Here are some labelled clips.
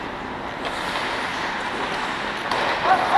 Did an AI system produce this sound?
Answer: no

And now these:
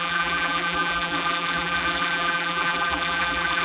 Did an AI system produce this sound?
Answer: yes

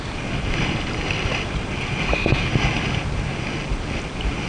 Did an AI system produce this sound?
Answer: no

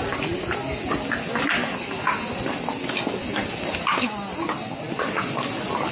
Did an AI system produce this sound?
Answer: no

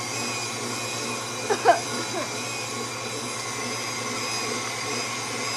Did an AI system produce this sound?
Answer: no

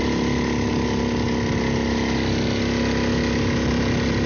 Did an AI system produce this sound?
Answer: no